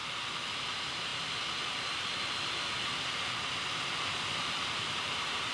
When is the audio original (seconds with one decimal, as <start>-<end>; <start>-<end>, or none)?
0.0-0.7; 1.1-4.4